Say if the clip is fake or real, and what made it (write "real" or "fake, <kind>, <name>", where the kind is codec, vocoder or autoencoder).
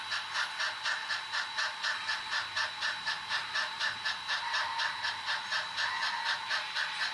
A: real